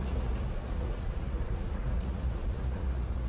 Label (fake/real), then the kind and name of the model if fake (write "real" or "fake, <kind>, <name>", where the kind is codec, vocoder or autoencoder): fake, vocoder, Vocos